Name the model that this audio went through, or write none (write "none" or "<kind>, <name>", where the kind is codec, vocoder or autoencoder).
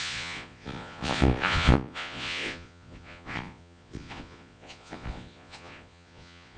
vocoder, Vocos